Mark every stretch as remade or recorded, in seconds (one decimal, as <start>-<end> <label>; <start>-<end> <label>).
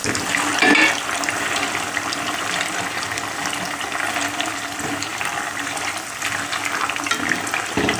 0.0-2.4 remade; 2.4-5.1 recorded; 5.1-5.9 remade; 5.9-8.0 recorded